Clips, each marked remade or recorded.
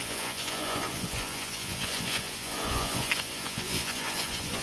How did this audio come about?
remade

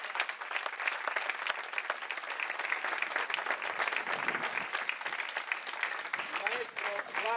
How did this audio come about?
recorded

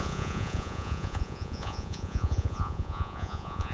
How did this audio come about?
remade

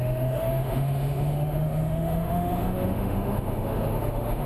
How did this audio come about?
remade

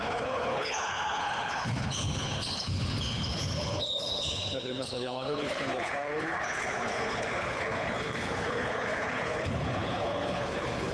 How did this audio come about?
remade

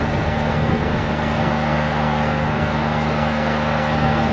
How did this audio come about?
remade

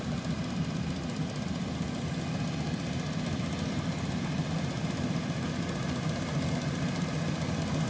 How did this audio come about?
recorded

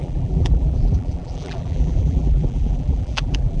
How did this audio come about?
remade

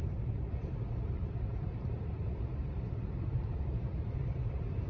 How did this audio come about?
remade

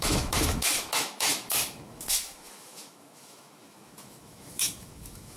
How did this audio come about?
remade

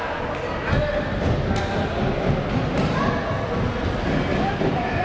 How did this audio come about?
recorded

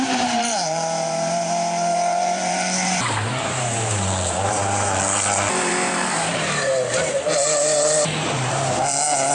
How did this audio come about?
remade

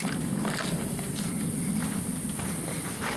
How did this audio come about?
recorded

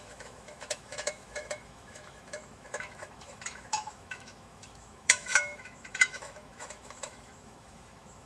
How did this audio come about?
remade